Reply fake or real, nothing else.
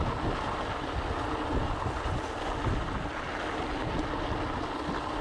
real